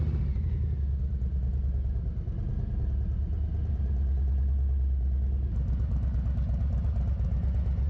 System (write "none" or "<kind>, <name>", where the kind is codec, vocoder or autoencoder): none